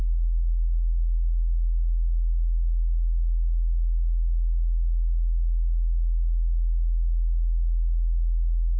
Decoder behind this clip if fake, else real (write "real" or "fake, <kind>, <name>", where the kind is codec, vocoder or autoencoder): real